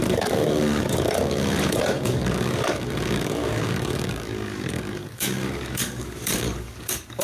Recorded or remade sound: remade